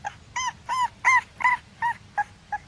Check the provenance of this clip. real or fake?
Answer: real